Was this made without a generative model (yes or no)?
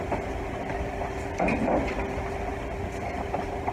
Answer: yes